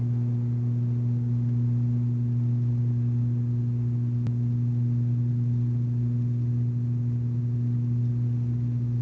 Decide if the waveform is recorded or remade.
recorded